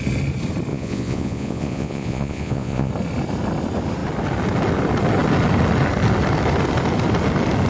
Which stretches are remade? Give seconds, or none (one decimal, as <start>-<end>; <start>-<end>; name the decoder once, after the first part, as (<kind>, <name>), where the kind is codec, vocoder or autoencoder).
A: 0.7-2.9 (vocoder, Vocos)